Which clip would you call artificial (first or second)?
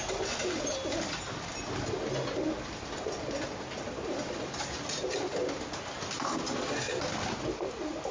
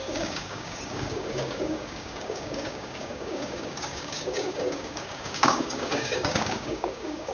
second